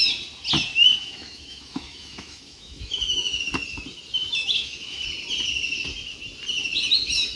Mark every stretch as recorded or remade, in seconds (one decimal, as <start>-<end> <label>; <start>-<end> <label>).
0.0-0.7 recorded; 0.7-3.4 remade; 3.4-4.4 recorded; 4.4-5.0 remade; 5.0-7.3 recorded